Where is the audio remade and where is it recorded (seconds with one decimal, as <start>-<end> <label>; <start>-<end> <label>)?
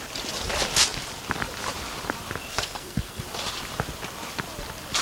0.0-2.5 recorded; 2.5-3.2 remade; 3.2-5.0 recorded